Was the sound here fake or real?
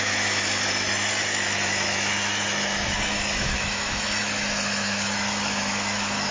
fake